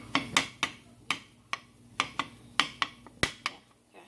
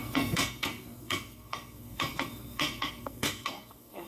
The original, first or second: first